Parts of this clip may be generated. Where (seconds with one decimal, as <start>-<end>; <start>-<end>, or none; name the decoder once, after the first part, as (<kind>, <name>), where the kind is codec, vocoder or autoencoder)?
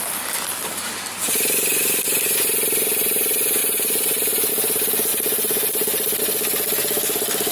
1.7-2.5 (vocoder, BigVGAN v2); 3.6-4.5